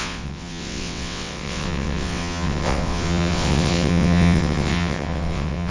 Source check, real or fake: fake